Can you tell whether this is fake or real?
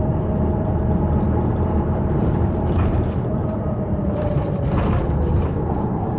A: fake